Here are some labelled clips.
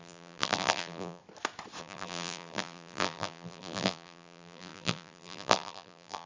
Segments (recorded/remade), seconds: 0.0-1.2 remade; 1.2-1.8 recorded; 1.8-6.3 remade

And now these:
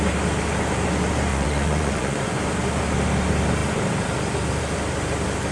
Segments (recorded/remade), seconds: 0.0-1.3 recorded; 1.3-2.4 remade; 2.4-5.5 recorded

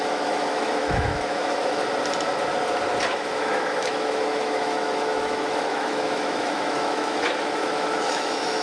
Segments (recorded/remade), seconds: 0.0-1.8 remade; 1.8-3.1 recorded; 3.1-8.6 remade

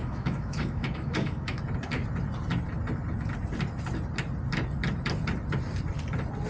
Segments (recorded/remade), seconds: 0.0-1.6 remade; 1.6-6.5 recorded

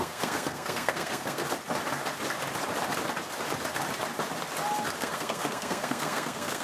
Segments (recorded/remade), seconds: 0.0-1.4 remade; 1.4-5.0 recorded; 5.0-6.6 remade